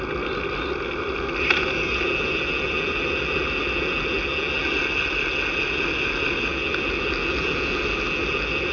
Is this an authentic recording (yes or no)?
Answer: yes